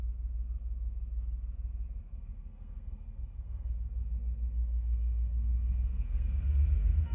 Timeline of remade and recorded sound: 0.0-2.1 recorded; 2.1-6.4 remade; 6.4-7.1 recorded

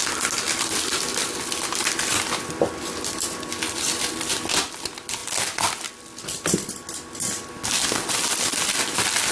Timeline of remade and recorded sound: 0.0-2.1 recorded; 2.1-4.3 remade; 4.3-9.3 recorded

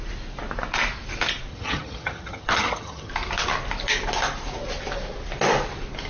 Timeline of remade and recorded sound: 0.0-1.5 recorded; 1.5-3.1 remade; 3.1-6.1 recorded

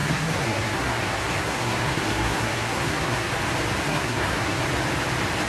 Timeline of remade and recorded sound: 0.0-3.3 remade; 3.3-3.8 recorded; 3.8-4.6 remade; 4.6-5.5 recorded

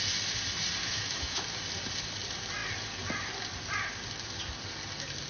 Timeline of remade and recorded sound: 0.0-0.8 recorded; 0.8-1.4 remade; 1.4-5.3 recorded

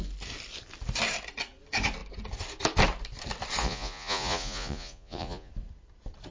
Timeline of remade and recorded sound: 0.0-3.6 recorded; 3.6-5.5 remade; 5.5-6.3 recorded